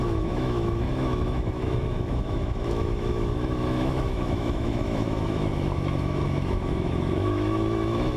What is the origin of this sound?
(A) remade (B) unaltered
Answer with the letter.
A